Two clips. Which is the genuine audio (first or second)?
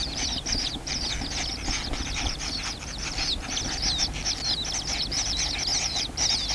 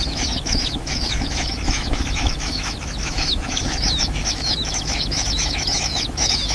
first